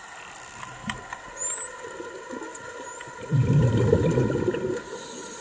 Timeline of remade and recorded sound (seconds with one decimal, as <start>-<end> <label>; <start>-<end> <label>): 0.0-0.8 recorded; 0.8-1.5 remade; 1.5-2.5 recorded; 2.5-4.0 remade; 4.0-5.4 recorded